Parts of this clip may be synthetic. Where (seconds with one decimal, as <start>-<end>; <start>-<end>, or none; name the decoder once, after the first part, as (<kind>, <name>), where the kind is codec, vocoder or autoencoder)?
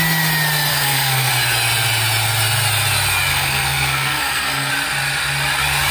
0.7-1.3 (codec, SNAC); 3.3-4.7